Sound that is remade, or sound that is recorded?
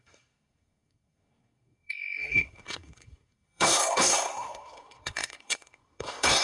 remade